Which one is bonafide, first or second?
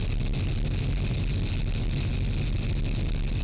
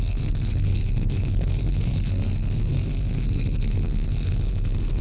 first